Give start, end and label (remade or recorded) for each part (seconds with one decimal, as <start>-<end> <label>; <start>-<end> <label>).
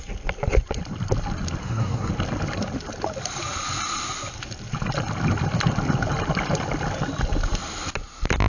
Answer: 0.0-1.6 recorded; 1.6-2.1 remade; 2.1-8.5 recorded